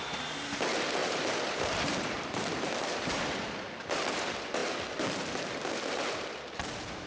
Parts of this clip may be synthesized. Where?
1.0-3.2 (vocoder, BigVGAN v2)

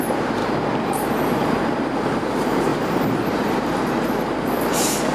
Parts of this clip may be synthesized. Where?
0.0-0.4 (vocoder, BigVGAN v2); 1.1-2.7; 3.3-5.1